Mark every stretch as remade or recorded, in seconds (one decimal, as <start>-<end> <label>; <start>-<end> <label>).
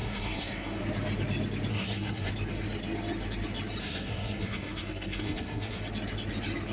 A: 0.0-0.8 remade; 0.8-1.7 recorded; 1.7-2.3 remade; 2.3-3.8 recorded; 3.8-5.8 remade; 5.8-6.7 recorded